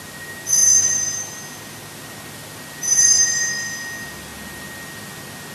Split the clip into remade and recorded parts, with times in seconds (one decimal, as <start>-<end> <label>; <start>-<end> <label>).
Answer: 0.0-4.3 recorded; 4.3-5.0 remade; 5.0-5.5 recorded